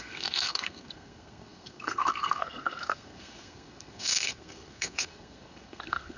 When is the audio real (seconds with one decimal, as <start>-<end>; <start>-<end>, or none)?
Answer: none

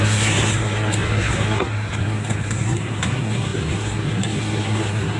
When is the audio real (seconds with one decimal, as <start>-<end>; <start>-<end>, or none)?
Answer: none

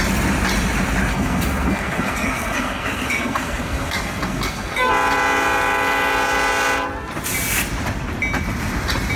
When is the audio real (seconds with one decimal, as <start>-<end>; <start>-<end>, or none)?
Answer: 0.0-1.1; 4.9-9.2

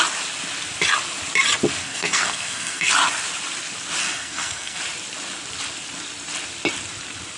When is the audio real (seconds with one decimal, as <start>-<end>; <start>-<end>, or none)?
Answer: 0.0-1.8; 2.9-4.0; 4.8-7.4

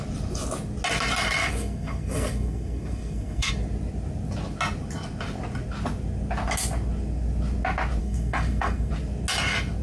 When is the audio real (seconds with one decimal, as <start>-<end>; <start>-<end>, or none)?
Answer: 0.0-1.4; 3.5-8.0; 8.9-9.8

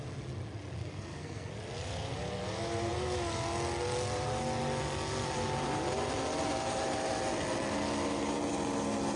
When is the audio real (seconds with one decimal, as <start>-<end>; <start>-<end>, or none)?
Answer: 0.0-0.8; 1.5-9.2

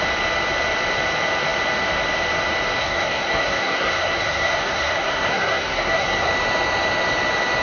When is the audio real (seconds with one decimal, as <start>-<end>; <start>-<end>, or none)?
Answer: 0.0-2.8; 6.3-7.6

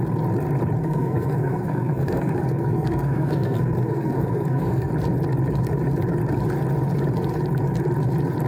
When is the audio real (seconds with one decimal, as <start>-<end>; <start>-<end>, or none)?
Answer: 0.0-0.8; 4.9-8.5